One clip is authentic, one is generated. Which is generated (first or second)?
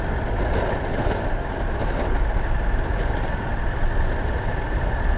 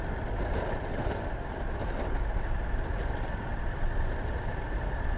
second